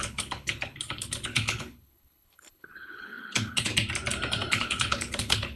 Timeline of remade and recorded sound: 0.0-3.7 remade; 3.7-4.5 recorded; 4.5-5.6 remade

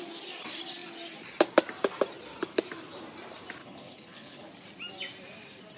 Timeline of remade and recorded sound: 0.0-3.6 recorded; 3.6-4.5 remade; 4.5-5.8 recorded

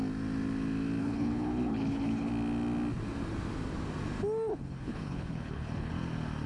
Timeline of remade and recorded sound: 0.0-1.0 recorded; 1.0-2.3 remade; 2.3-4.5 recorded; 4.5-5.9 remade; 5.9-6.5 recorded

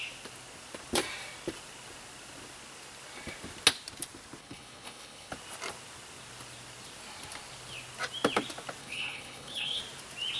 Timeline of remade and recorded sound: 0.0-4.4 recorded; 4.4-5.3 remade; 5.3-8.8 recorded; 8.8-9.8 remade; 9.8-10.4 recorded

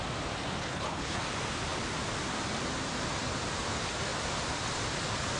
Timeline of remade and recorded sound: 0.0-0.6 recorded; 0.6-1.2 remade; 1.2-5.4 recorded

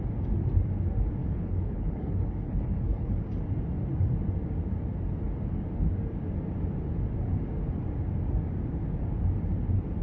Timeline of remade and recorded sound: 0.0-1.2 recorded; 1.2-3.2 remade; 3.2-10.0 recorded

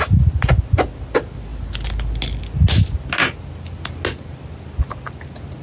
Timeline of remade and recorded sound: 0.0-5.6 recorded

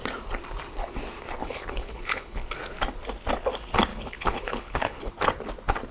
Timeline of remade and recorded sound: 0.0-1.4 recorded; 1.4-2.4 remade; 2.4-3.9 recorded; 3.9-5.1 remade; 5.1-5.9 recorded